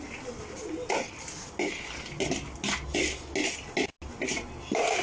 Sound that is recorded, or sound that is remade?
recorded